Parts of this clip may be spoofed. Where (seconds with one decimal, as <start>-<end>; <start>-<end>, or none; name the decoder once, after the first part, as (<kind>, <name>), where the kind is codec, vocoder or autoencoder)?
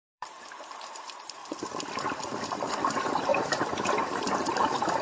0.0-1.4 (vocoder, BigVGAN v2); 2.5-5.0